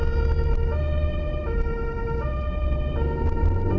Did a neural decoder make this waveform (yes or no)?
no